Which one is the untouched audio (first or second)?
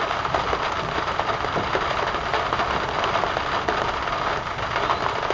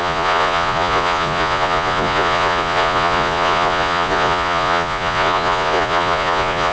first